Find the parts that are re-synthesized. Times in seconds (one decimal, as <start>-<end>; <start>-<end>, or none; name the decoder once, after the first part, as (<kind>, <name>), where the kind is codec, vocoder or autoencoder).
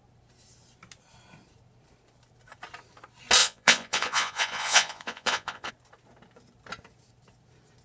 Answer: 3.4-5.7 (vocoder, Vocos)